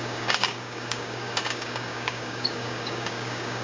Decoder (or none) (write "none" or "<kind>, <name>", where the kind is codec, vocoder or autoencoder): codec, DAC